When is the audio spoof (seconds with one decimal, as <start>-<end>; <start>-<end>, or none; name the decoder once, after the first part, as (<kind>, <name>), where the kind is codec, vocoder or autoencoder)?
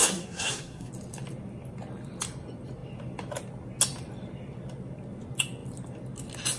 0.0-0.9 (codec, SNAC)